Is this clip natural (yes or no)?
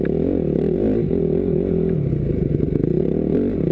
yes